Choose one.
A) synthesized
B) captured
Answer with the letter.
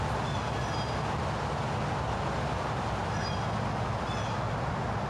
B